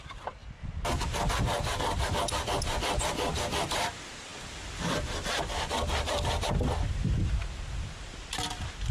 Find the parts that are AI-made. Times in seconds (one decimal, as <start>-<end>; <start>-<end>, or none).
0.0-0.4; 1.3-7.2; 7.8-8.9